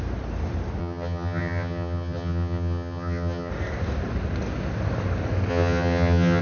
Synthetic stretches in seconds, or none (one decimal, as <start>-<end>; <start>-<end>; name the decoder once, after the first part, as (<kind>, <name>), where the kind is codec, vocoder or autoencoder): 0.8-3.5 (vocoder, HiFi-GAN); 5.5-6.4